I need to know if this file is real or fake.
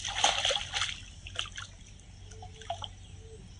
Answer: real